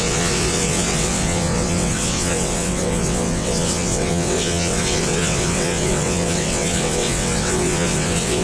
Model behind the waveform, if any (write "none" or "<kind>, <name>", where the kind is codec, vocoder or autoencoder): vocoder, WaveNeXt